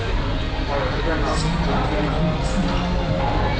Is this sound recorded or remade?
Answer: recorded